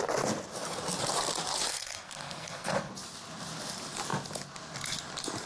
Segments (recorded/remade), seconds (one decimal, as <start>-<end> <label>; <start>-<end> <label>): 0.0-1.7 recorded; 1.7-2.9 remade; 2.9-5.5 recorded